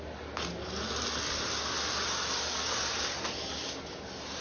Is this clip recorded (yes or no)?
yes